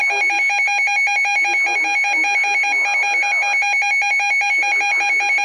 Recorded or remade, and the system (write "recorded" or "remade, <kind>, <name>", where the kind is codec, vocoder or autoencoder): recorded